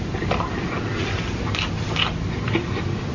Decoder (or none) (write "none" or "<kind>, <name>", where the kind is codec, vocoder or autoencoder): none